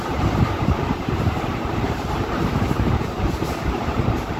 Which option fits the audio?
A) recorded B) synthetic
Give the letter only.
B